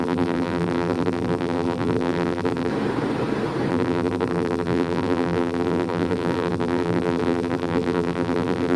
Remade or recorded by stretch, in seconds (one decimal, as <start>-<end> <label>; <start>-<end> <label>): 0.0-2.7 remade; 2.7-3.7 recorded; 3.7-8.8 remade